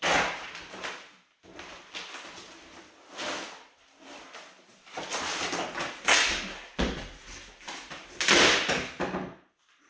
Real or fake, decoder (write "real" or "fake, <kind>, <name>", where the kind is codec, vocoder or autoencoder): real